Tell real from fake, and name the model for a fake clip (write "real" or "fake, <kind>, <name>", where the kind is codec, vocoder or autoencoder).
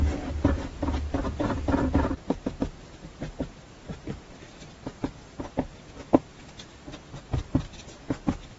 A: fake, vocoder, BigVGAN v2